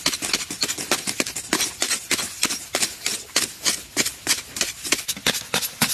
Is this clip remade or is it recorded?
recorded